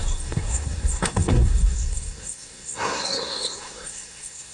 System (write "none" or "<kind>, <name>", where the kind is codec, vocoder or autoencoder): codec, SNAC